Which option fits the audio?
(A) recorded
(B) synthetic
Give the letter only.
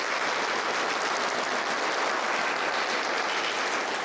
A